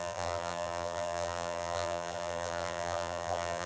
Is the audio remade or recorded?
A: remade